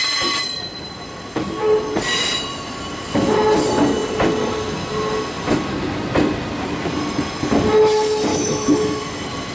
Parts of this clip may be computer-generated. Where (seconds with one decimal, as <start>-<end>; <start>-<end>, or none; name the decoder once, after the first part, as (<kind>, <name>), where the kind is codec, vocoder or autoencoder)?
8.3-9.0 (autoencoder, DAC-VAE)